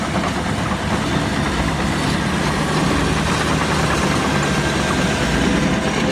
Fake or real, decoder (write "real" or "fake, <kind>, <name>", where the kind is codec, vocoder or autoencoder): real